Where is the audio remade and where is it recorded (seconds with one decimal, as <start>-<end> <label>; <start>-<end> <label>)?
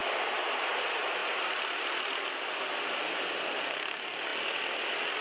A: 0.0-5.2 recorded